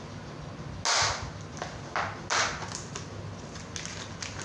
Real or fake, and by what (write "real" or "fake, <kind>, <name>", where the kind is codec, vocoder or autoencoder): real